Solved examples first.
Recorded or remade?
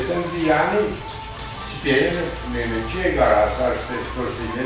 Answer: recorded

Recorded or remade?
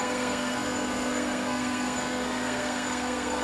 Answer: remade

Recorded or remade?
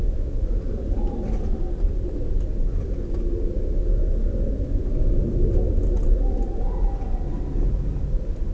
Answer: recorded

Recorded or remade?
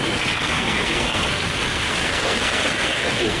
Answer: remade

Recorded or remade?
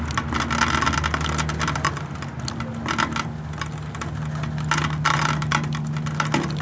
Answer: recorded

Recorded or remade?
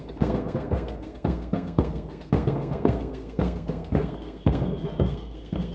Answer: remade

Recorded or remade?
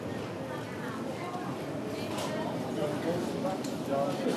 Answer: recorded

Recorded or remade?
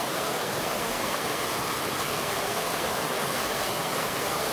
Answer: remade